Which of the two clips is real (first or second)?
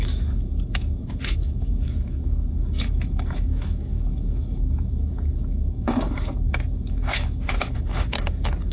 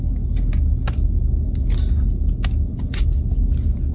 second